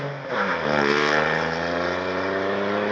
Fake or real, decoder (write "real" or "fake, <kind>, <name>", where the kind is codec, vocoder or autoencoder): real